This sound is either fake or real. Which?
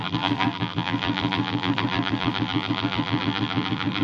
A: fake